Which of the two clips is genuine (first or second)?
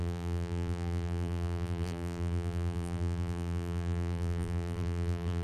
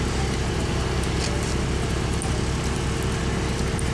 second